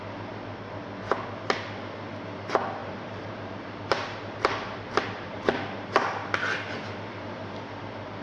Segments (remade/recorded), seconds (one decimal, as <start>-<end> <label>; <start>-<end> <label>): 0.0-2.8 recorded; 2.8-5.4 remade; 5.4-8.2 recorded